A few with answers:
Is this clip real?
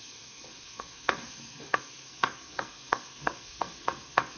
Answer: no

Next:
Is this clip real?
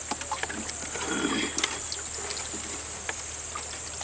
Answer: yes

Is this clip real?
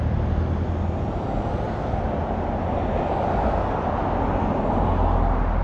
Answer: yes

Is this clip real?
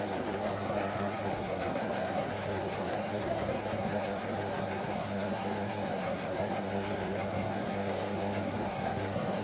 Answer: no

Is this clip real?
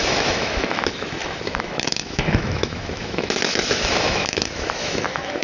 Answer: no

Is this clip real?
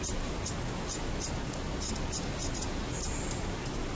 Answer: yes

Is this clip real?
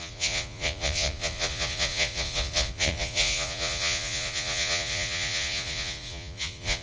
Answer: no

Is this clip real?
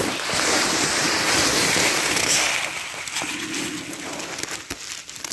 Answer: yes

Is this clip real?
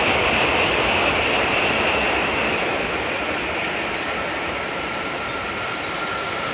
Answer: no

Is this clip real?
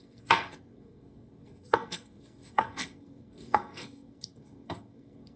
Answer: no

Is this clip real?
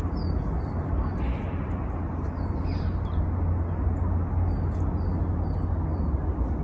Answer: yes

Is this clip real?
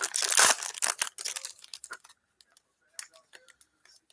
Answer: yes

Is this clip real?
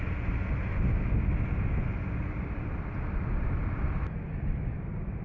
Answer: yes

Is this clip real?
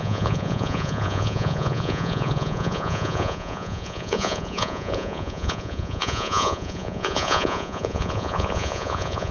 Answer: no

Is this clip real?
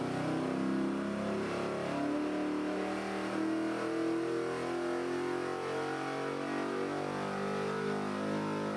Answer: yes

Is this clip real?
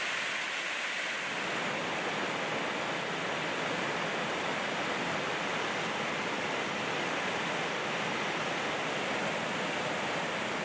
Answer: yes